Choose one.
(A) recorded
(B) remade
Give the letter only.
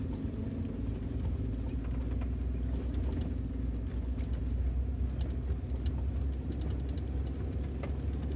A